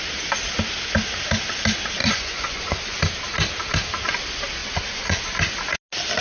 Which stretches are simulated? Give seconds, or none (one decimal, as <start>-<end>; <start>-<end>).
2.0-3.0; 4.6-5.2